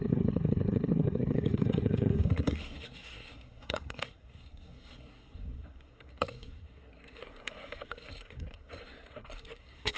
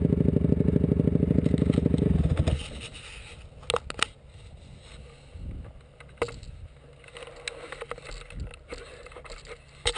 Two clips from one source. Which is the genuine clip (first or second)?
second